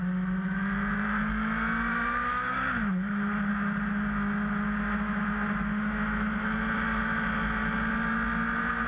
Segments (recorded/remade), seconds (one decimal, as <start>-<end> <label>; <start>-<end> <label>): 0.0-1.9 recorded; 1.9-3.5 remade; 3.5-8.9 recorded